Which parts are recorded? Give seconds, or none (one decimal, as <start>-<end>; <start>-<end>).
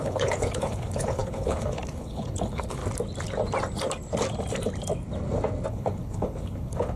2.8-5.7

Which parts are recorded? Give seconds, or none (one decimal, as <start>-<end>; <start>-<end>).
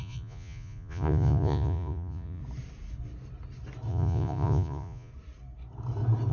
2.4-3.9; 5.1-6.3